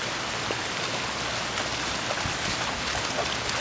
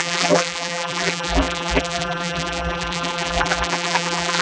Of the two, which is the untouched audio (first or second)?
first